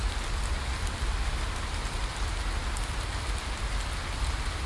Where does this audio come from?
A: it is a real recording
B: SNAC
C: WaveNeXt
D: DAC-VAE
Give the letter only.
A